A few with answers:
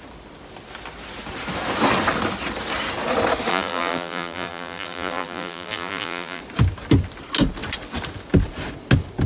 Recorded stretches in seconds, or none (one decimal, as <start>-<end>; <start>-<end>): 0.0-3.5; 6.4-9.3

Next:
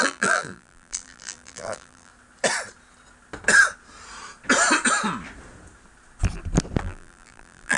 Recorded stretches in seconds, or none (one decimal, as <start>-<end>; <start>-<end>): 2.1-6.8

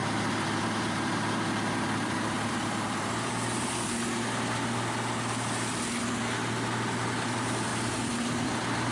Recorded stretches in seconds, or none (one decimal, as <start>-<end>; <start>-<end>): 3.9-7.7; 8.5-8.9

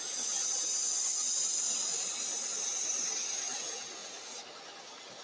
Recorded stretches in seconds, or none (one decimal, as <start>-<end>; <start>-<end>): 0.0-2.9; 3.6-5.2

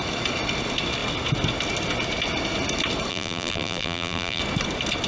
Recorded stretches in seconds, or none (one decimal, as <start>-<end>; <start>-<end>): 0.0-3.1; 4.4-5.1

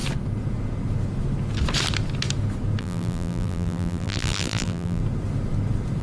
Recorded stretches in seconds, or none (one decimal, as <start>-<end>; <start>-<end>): 0.0-2.8; 5.0-6.0